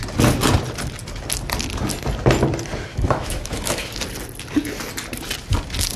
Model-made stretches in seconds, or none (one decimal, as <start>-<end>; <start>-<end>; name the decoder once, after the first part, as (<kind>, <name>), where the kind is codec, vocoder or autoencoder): 2.9-3.9 (autoencoder, DAC-VAE)

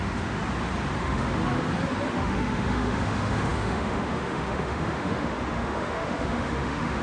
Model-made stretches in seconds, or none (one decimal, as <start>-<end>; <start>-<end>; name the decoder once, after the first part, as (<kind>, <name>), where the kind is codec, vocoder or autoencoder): 0.0-0.4 (autoencoder, DAC-VAE); 1.0-1.4; 2.1-7.0

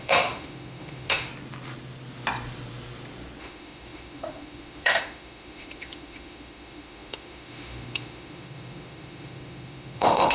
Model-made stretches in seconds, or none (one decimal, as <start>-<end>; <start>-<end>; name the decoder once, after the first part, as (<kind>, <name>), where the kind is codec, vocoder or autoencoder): 0.0-1.3 (autoencoder, DAC-VAE); 3.4-10.3

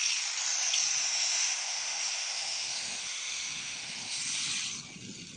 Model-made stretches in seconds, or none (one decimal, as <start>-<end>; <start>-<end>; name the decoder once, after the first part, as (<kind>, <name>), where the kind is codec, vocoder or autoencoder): 1.0-4.2 (autoencoder, DAC-VAE)

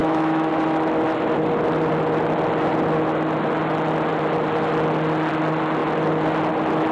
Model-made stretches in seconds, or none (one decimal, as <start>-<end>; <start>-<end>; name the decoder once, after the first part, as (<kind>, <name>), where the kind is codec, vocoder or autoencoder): 0.0-0.5 (autoencoder, DAC-VAE)

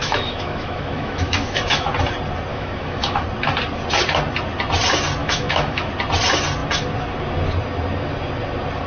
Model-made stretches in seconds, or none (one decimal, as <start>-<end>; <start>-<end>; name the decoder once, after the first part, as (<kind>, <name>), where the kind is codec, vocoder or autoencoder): 0.0-1.9 (autoencoder, DAC-VAE); 2.5-3.2; 5.2-5.9